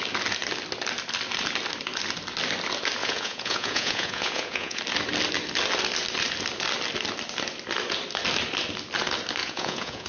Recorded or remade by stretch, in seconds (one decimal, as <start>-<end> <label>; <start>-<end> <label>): 0.0-3.0 recorded; 3.0-4.8 remade; 4.8-9.4 recorded; 9.4-10.1 remade